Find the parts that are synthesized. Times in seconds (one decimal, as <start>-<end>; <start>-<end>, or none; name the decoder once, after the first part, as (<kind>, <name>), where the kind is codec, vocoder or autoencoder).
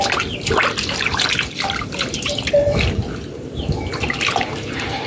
0.6-3.6 (vocoder, BigVGAN v2)